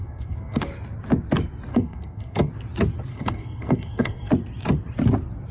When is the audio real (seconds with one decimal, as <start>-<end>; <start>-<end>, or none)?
0.6-1.7; 2.5-3.1; 4.3-5.5